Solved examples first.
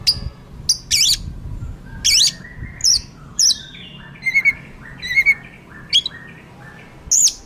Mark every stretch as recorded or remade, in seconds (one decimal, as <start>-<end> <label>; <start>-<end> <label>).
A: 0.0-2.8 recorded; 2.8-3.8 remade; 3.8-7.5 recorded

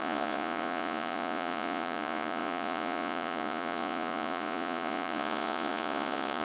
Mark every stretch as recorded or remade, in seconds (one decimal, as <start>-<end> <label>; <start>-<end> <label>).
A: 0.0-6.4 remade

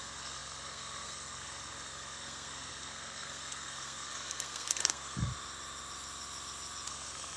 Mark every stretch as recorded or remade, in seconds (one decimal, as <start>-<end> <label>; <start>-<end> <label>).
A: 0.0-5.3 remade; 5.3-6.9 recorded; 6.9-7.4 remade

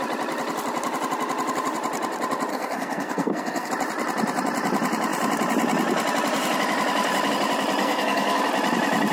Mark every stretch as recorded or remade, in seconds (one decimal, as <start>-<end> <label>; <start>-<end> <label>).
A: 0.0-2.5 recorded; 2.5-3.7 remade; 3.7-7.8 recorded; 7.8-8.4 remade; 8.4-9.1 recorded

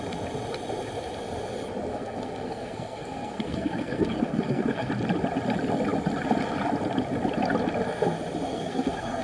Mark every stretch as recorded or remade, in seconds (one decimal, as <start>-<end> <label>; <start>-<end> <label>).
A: 0.0-1.9 recorded; 1.9-4.9 remade; 4.9-8.5 recorded; 8.5-9.2 remade

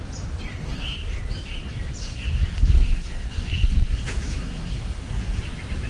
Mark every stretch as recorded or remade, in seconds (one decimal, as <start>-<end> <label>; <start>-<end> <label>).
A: 0.0-0.5 recorded; 0.5-1.2 remade; 1.2-2.0 recorded; 2.0-5.4 remade; 5.4-5.9 recorded

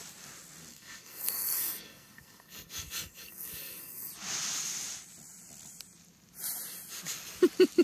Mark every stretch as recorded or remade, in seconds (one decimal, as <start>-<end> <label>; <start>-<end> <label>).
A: 0.0-0.7 recorded; 0.7-4.1 remade; 4.1-7.8 recorded